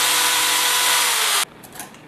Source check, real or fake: real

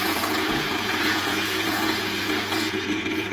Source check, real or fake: fake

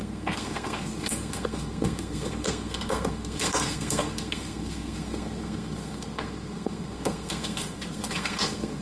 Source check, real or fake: fake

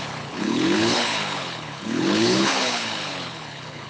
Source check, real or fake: fake